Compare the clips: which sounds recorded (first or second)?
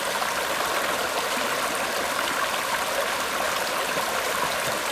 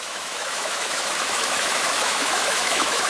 first